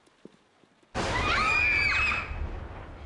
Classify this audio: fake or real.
real